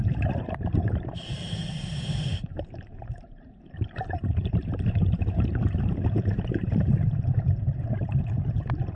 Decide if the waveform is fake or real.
fake